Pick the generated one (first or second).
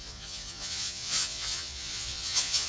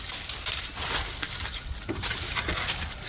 first